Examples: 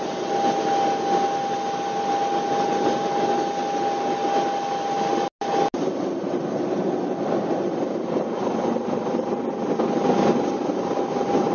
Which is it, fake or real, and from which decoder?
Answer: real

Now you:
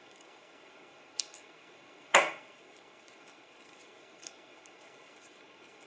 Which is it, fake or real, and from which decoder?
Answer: fake, codec, SNAC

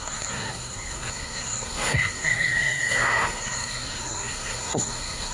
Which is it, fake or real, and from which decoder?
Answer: fake, codec, SNAC